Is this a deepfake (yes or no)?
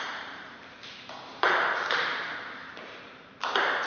yes